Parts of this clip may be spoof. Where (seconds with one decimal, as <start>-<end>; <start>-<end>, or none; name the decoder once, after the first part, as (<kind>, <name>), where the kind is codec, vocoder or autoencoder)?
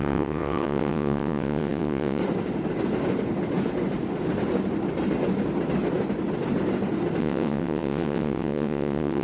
0.0-2.2 (vocoder, WaveNeXt); 7.2-9.2